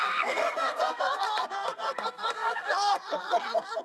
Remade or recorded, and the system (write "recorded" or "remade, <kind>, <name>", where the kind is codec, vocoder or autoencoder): remade, codec, SNAC